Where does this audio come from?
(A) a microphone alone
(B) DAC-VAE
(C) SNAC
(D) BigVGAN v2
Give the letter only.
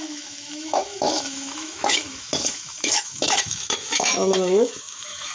B